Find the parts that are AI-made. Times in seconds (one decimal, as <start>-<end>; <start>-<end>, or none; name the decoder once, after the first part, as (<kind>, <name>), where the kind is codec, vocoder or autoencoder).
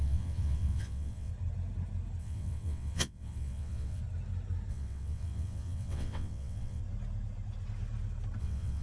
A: 0.0-1.3 (vocoder, WaveNeXt); 2.2-4.0; 4.7-6.8; 8.4-8.8